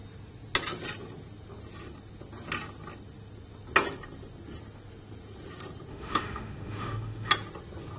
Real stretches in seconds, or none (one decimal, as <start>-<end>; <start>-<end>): 0.0-5.9; 7.3-8.0